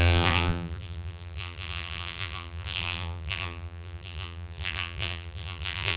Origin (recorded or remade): remade